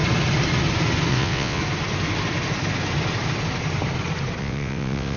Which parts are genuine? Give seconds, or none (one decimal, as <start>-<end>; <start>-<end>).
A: 0.0-1.1; 1.6-4.4